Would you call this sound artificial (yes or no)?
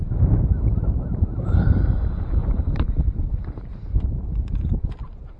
yes